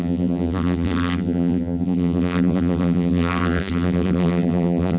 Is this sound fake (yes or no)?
yes